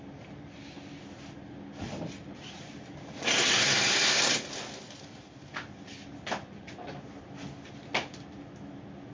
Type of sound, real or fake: real